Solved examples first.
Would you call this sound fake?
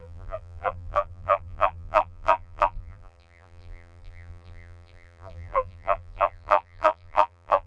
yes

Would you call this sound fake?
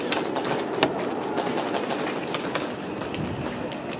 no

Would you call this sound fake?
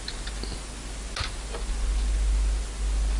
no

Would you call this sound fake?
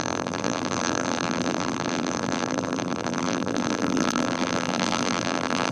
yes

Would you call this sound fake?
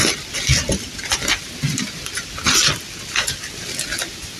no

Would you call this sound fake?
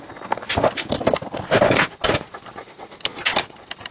no